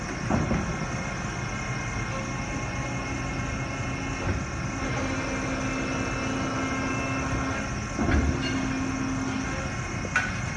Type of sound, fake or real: real